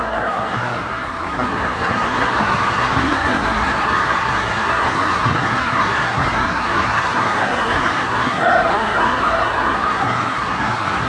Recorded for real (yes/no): no